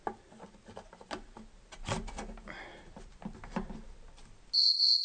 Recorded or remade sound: recorded